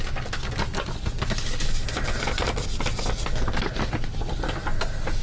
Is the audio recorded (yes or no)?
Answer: yes